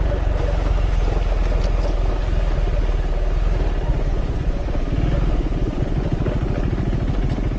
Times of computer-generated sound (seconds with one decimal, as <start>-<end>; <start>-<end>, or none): 3.9-6.2